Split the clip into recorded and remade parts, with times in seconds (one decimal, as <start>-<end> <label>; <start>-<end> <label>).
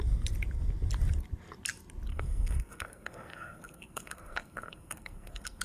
0.0-2.1 recorded; 2.1-5.6 remade